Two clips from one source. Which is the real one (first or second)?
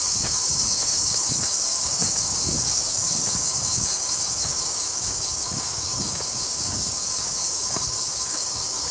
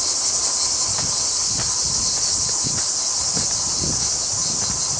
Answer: second